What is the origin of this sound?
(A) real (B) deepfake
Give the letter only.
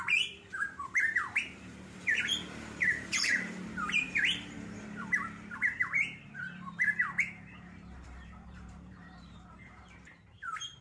B